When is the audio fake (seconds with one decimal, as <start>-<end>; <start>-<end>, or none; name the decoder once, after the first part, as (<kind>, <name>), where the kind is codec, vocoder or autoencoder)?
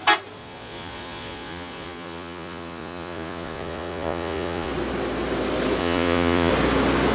0.4-4.7 (vocoder, Vocos); 5.8-6.5